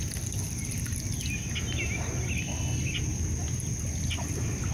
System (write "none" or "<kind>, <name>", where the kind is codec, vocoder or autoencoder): none